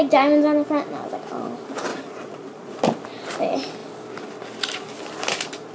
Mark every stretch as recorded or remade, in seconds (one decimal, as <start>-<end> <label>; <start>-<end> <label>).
0.0-1.9 recorded; 1.9-2.8 remade; 2.8-5.7 recorded